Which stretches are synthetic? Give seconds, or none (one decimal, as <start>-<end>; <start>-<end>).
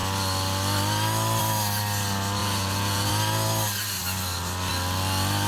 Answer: 2.4-3.1